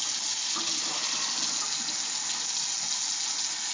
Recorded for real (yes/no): yes